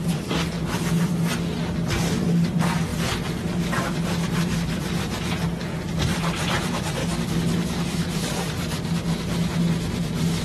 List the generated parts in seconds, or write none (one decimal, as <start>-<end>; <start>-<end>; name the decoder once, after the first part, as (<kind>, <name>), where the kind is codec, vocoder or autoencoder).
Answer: 7.0-8.1 (codec, DAC)